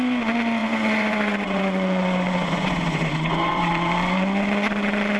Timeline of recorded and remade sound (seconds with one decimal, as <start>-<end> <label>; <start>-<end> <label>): 0.0-0.6 recorded; 0.6-3.7 remade; 3.7-5.2 recorded